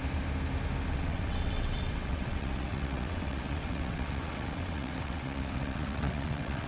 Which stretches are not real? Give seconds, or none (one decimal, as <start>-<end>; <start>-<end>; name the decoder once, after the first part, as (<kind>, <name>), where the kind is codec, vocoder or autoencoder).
0.9-6.7 (vocoder, WaveNeXt)